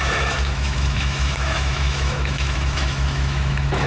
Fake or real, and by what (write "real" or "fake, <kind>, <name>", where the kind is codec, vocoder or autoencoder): fake, autoencoder, DAC-VAE